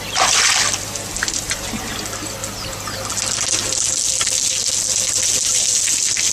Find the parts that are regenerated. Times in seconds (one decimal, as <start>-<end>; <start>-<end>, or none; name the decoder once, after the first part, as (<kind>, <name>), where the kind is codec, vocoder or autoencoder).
none